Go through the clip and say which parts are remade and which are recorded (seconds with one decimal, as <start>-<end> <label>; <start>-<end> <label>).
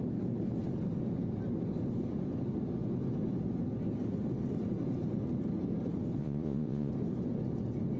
0.0-6.2 recorded; 6.2-6.9 remade; 6.9-8.0 recorded